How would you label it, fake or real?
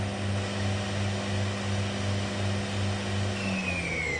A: real